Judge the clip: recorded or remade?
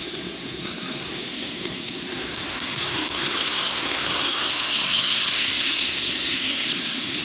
remade